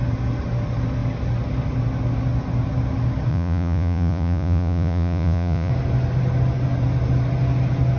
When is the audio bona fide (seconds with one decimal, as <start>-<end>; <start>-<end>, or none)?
0.0-3.3; 5.7-8.0